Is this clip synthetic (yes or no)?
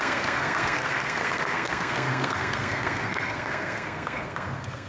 yes